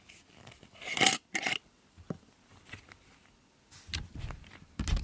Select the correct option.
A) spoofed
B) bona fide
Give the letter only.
B